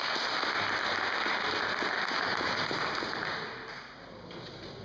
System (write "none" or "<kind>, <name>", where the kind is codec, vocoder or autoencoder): none